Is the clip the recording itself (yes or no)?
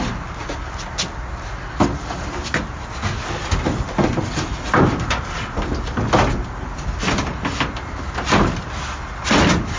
yes